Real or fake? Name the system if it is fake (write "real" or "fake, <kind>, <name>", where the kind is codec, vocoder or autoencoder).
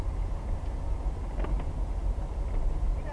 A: real